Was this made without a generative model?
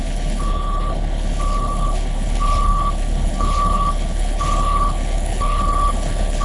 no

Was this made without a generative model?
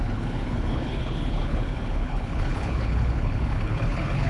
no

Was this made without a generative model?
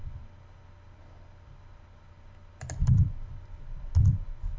yes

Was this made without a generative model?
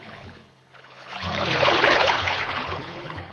no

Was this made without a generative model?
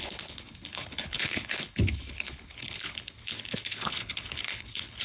no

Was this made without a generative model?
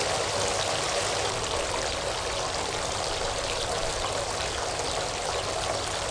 yes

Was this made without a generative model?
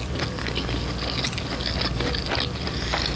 yes